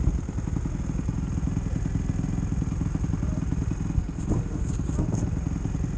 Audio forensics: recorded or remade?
recorded